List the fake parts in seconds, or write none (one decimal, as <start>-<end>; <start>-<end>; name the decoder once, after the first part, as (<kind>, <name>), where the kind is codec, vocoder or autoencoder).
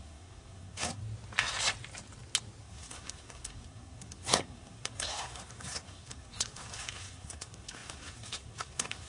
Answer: 0.0-1.0 (codec, SNAC); 2.6-9.1